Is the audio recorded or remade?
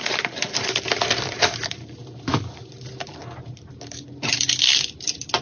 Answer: remade